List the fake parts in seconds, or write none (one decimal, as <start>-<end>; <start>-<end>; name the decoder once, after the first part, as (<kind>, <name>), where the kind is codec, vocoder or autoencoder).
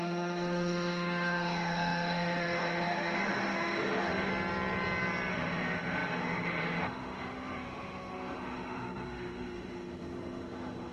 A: 0.0-4.3 (autoencoder, DAC-VAE); 5.3-10.9